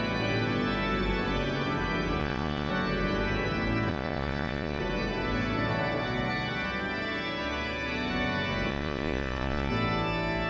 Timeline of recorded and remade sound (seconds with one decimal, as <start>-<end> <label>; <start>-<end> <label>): 0.0-2.2 recorded; 2.2-2.7 remade; 2.7-3.9 recorded; 3.9-4.8 remade; 4.8-8.7 recorded; 8.7-9.7 remade; 9.7-10.5 recorded